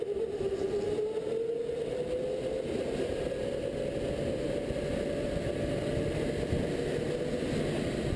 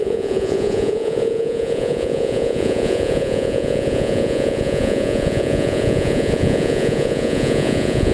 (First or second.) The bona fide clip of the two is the first